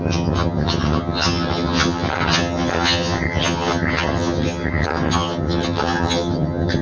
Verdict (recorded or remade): remade